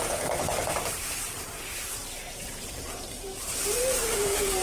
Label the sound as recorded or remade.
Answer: remade